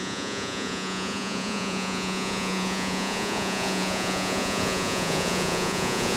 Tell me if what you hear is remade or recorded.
remade